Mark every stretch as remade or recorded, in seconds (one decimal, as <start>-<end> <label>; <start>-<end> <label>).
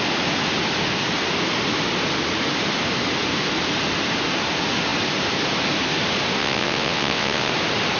0.0-6.4 recorded; 6.4-7.5 remade; 7.5-8.0 recorded